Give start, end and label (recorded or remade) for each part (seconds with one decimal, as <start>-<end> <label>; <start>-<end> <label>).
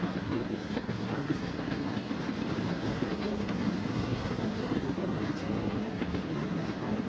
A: 0.0-2.1 remade; 2.1-2.7 recorded; 2.7-7.1 remade